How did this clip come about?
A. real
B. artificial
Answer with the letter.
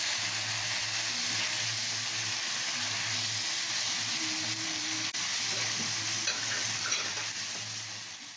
A